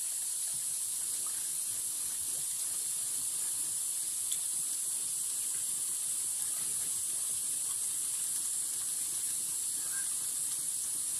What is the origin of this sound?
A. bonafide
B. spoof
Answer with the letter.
A